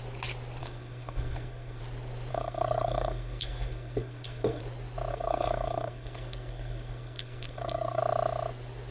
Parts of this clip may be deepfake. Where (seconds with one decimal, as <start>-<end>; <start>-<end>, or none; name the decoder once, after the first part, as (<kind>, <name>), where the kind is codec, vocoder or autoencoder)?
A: 0.6-1.8 (codec, SNAC); 2.3-4.6; 5.1-8.0